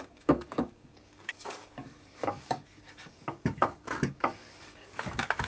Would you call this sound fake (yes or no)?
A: yes